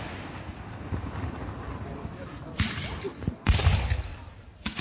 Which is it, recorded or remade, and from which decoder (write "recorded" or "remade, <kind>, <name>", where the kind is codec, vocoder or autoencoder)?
recorded